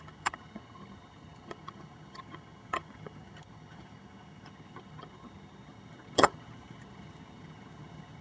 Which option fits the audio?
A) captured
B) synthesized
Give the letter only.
B